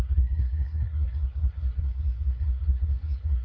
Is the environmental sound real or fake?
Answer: fake